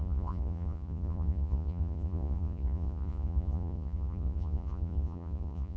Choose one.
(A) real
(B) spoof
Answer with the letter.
B